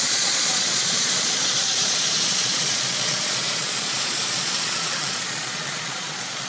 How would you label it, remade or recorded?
remade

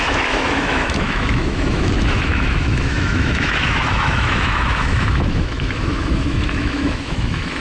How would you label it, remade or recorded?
remade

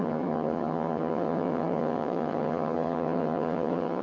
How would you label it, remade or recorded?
remade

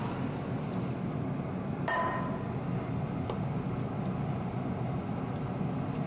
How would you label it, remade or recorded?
recorded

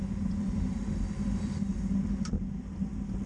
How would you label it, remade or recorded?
recorded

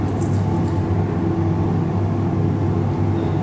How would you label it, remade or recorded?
recorded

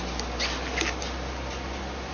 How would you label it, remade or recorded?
recorded